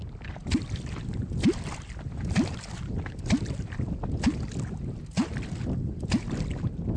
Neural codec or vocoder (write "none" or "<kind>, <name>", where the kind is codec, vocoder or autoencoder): none